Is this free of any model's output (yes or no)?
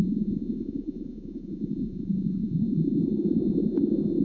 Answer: no